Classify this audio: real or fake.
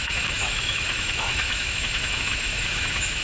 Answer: fake